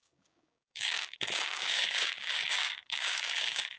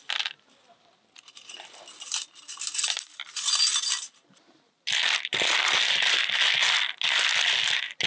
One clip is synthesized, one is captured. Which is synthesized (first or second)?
first